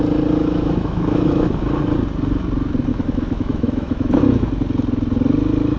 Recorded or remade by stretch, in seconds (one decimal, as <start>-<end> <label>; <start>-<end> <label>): 0.0-0.4 recorded; 0.4-1.6 remade; 1.6-2.9 recorded; 2.9-4.5 remade; 4.5-5.8 recorded